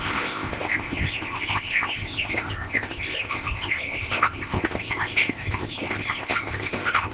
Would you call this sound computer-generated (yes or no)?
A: yes